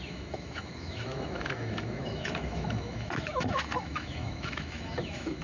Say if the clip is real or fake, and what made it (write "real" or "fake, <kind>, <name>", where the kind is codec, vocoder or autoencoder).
fake, autoencoder, DAC-VAE